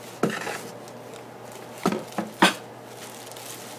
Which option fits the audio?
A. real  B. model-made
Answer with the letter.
A